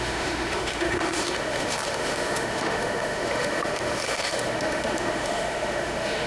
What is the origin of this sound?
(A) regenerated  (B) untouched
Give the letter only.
A